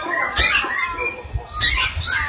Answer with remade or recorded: recorded